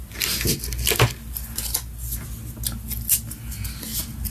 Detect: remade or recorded recorded